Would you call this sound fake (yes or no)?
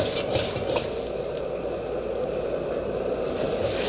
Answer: no